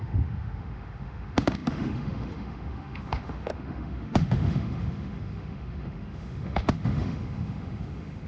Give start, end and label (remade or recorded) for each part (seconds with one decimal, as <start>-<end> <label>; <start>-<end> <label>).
0.0-8.3 remade